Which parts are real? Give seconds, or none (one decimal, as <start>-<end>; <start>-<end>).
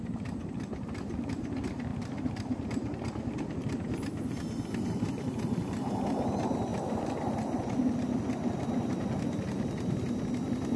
0.0-10.8